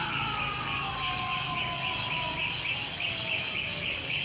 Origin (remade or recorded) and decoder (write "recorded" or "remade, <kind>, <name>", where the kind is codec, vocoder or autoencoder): remade, codec, DAC